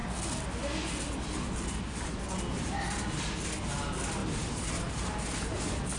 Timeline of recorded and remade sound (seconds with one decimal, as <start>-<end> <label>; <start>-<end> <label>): 0.0-4.2 recorded; 4.2-5.6 remade; 5.6-6.0 recorded